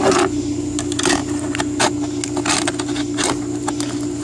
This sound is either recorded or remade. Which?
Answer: recorded